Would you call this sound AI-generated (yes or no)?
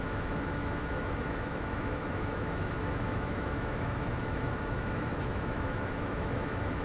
yes